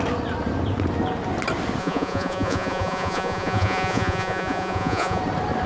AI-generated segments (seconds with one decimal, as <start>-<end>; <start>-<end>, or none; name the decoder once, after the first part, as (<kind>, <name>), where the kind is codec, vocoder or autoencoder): 1.8-5.2 (vocoder, Vocos)